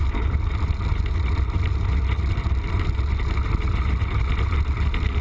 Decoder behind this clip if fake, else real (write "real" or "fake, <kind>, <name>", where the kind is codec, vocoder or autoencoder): real